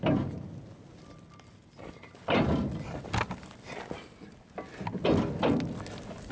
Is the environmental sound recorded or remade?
recorded